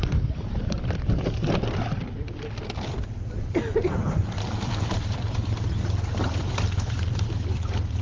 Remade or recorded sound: remade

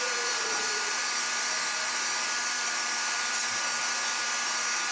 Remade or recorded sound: remade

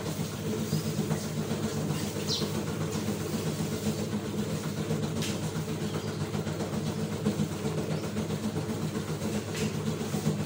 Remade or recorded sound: recorded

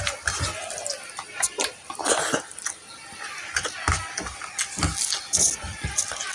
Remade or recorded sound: recorded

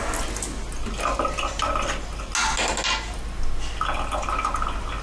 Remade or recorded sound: recorded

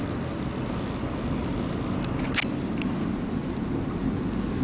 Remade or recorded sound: recorded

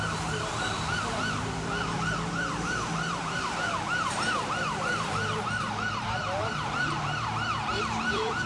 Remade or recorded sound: remade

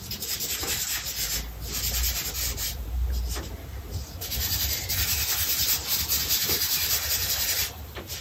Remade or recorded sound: recorded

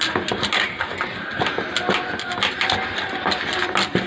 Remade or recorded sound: recorded